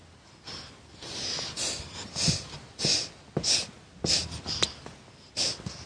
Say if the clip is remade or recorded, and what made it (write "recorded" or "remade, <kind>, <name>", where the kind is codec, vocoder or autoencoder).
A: recorded